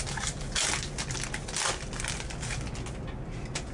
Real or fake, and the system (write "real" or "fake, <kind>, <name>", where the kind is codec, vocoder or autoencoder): real